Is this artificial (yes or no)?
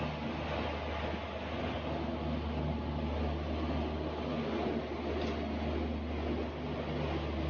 no